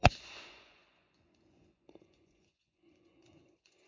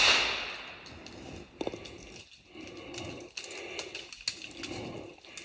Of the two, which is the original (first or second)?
second